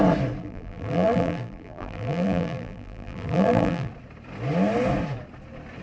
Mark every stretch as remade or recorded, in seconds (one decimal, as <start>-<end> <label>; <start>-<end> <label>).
0.0-0.4 recorded; 0.4-3.9 remade; 3.9-5.8 recorded